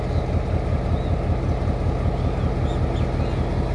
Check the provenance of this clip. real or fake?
real